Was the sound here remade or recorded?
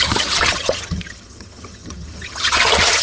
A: remade